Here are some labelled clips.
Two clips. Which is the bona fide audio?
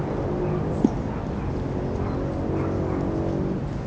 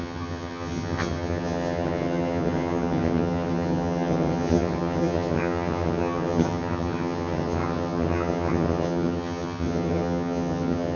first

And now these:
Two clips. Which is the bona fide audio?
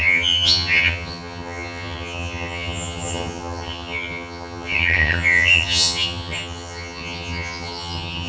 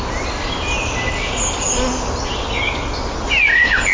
second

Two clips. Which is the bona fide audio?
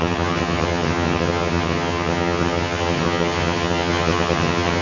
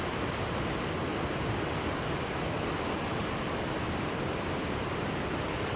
second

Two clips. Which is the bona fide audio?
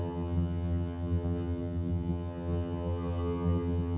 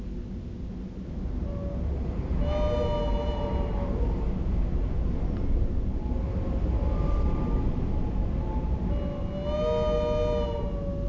second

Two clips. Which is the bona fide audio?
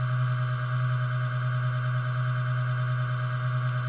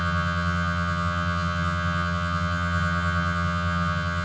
first